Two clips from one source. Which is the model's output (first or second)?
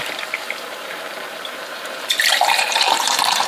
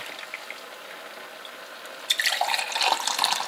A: first